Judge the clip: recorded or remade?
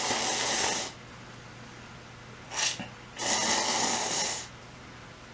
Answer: recorded